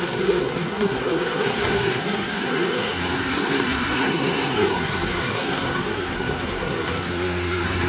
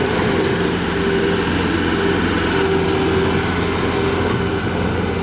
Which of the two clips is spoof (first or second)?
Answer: first